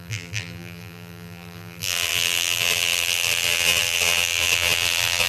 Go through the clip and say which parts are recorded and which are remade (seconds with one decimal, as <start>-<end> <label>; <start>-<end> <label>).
0.0-5.3 remade